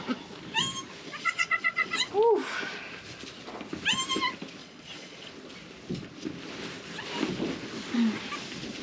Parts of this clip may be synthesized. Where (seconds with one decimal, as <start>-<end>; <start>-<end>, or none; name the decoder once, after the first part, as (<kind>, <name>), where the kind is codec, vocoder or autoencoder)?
1.1-2.1 (vocoder, Vocos); 4.6-5.3